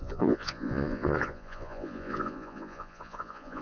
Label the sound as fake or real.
fake